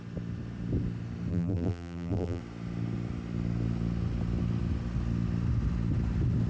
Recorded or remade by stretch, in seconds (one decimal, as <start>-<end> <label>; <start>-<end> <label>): 0.0-1.3 recorded; 1.3-2.4 remade; 2.4-6.5 recorded

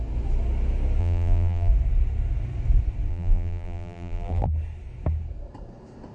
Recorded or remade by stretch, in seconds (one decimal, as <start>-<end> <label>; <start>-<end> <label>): 0.0-1.0 recorded; 1.0-1.7 remade; 1.7-3.1 recorded; 3.1-4.5 remade; 4.5-6.1 recorded

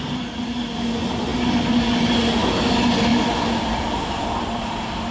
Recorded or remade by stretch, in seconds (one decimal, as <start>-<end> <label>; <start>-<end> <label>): 0.0-3.1 recorded; 3.1-5.1 remade

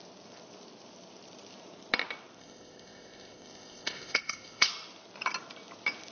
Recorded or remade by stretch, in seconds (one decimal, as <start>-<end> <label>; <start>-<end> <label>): 0.0-2.4 recorded; 2.4-4.7 remade; 4.7-6.1 recorded

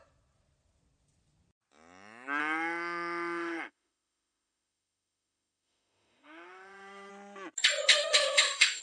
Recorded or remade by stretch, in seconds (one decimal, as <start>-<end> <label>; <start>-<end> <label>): 0.0-2.4 recorded; 2.4-7.1 remade; 7.1-7.9 recorded; 7.9-8.8 remade

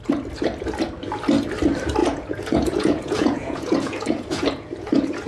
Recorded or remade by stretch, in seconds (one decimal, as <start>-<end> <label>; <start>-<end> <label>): 0.0-2.0 recorded; 2.0-5.3 remade

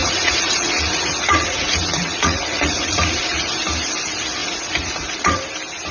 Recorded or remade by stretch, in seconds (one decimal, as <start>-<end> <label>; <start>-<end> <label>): 0.0-3.5 remade; 3.5-4.4 recorded; 4.4-5.4 remade; 5.4-5.9 recorded

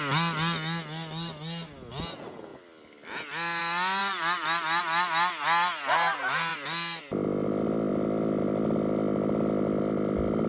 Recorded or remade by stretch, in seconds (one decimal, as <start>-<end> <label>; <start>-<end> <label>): 0.0-10.5 recorded